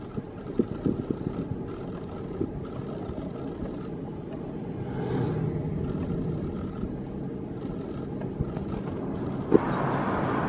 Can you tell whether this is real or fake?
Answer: real